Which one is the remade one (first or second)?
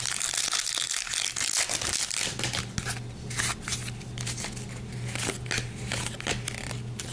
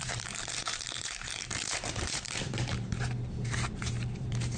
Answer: second